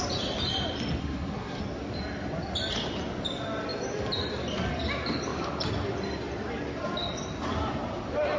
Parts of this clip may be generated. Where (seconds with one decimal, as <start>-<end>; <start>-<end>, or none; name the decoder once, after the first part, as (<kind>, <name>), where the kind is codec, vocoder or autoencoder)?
1.0-1.6 (codec, SNAC)